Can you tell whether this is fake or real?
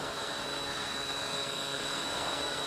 fake